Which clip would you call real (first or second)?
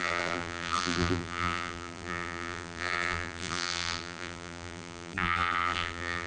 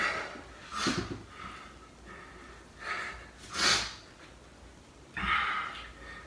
second